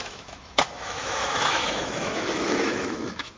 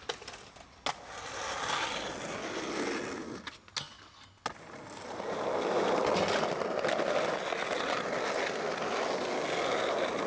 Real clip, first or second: second